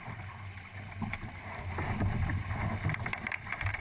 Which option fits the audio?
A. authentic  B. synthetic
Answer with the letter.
A